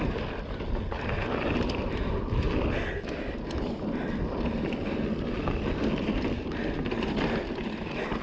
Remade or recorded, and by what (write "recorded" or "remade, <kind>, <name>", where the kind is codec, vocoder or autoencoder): recorded